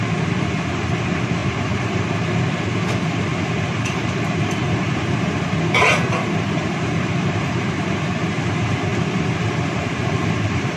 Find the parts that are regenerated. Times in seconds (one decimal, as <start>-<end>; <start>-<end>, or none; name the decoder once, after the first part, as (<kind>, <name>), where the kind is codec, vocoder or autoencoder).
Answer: 0.0-8.9 (vocoder, BigVGAN v2); 9.7-10.8